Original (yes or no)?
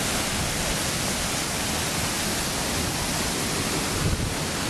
yes